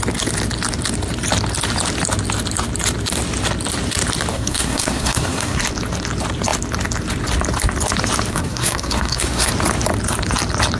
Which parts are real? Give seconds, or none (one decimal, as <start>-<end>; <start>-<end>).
0.0-4.3; 5.6-8.3; 9.5-10.8